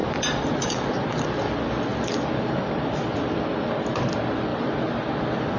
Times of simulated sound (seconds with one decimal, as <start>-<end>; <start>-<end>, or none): 0.0-1.3; 1.9-4.1